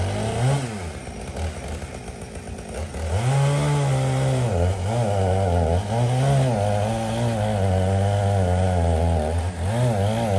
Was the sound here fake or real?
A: real